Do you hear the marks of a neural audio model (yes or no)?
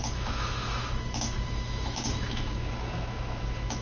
yes